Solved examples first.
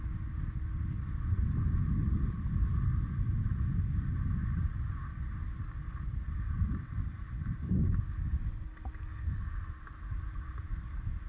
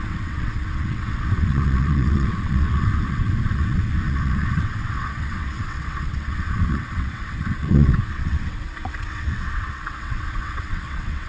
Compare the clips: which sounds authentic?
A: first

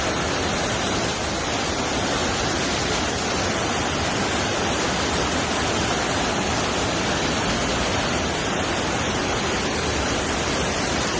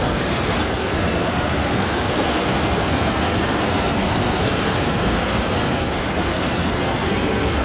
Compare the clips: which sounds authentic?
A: first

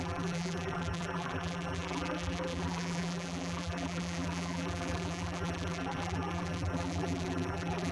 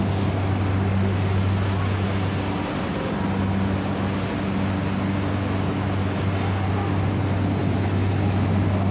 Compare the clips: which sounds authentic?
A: second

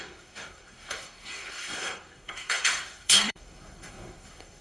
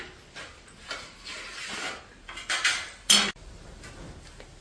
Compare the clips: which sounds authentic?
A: second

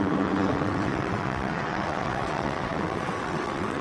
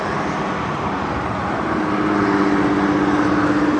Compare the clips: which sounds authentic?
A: second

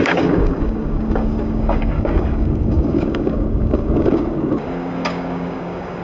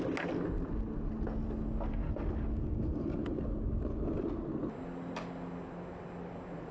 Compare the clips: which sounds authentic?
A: second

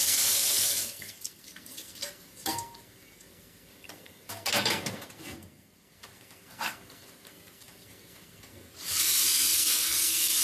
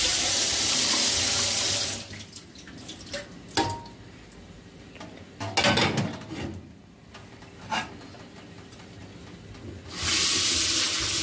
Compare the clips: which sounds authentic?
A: second